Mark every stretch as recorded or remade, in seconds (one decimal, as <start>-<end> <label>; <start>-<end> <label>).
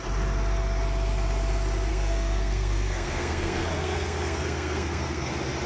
0.0-1.9 recorded; 1.9-5.3 remade; 5.3-5.7 recorded